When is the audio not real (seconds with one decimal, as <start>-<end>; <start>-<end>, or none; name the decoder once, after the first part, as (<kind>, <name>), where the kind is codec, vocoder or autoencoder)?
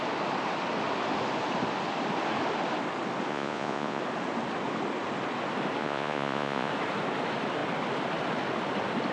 3.3-4.0 (vocoder, Vocos); 5.8-6.7